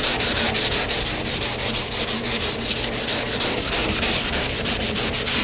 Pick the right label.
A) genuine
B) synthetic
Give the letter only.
B